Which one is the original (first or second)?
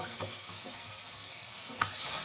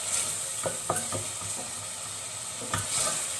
second